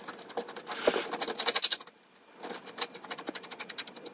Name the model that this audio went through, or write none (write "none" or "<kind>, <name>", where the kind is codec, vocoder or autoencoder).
none